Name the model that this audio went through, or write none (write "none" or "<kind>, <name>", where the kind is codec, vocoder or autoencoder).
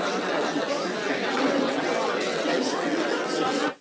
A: vocoder, WaveNeXt